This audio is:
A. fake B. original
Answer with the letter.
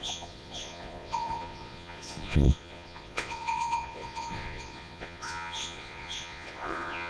A